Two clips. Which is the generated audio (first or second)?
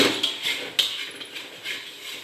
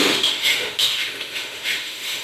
second